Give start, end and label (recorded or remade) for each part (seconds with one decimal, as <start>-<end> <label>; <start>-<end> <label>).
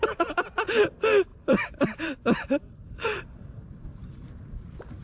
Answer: 0.0-1.3 recorded; 1.3-4.3 remade; 4.3-5.0 recorded